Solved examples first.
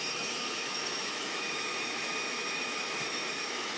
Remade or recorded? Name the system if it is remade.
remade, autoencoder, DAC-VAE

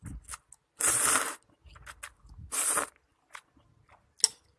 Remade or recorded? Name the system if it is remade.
recorded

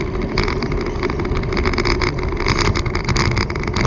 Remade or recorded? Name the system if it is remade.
recorded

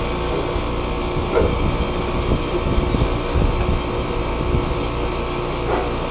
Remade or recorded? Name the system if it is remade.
recorded